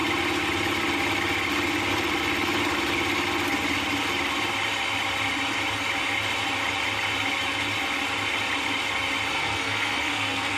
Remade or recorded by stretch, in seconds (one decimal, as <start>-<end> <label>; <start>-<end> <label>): 0.0-9.3 recorded; 9.3-10.6 remade